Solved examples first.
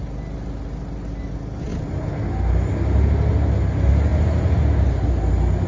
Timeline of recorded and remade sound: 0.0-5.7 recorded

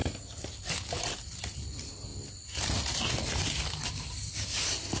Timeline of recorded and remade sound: 0.0-5.0 recorded

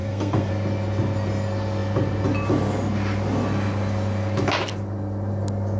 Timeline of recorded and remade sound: 0.0-0.5 remade; 0.5-5.8 recorded

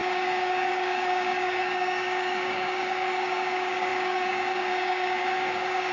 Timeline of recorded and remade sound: 0.0-5.9 remade

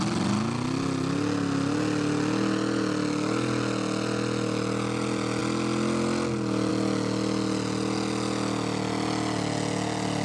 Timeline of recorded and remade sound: 0.0-10.2 recorded

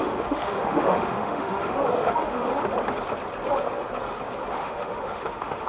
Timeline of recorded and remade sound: 0.0-2.5 remade; 2.5-4.5 recorded; 4.5-5.7 remade

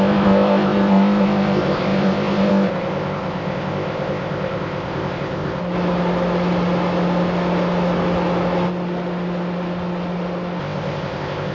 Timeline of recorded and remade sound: 0.0-5.6 remade; 5.6-10.6 recorded; 10.6-11.5 remade